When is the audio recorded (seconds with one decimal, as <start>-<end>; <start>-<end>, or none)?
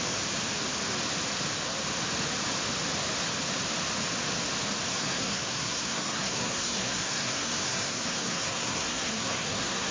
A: 0.0-4.9